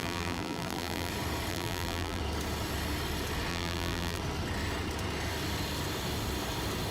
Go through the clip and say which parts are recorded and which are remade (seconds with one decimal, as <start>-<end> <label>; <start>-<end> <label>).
0.0-1.1 remade; 1.1-1.5 recorded; 1.5-2.2 remade; 2.2-3.5 recorded; 3.5-4.2 remade; 4.2-6.9 recorded